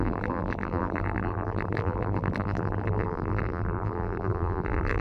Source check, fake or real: fake